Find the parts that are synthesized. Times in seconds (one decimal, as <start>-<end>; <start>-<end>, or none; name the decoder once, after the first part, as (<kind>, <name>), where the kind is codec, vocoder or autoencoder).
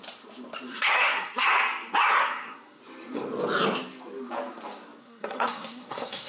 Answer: 0.7-1.5 (codec, SNAC); 2.1-2.8; 5.0-6.3